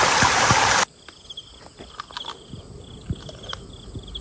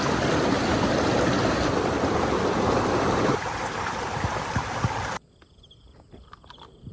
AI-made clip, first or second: second